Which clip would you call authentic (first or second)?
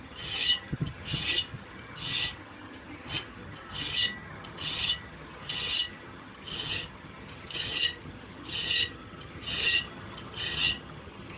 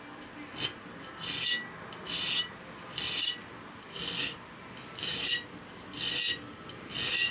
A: second